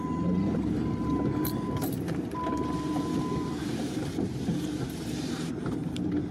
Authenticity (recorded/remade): remade